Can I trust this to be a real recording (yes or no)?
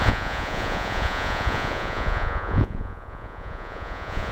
no